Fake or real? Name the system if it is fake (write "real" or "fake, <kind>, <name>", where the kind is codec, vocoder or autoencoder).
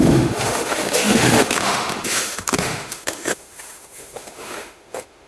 fake, autoencoder, DAC-VAE